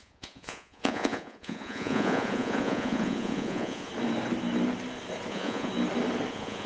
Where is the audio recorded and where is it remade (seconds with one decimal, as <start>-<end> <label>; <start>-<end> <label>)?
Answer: 0.0-3.9 remade; 3.9-5.3 recorded; 5.3-5.7 remade; 5.7-6.3 recorded; 6.3-6.7 remade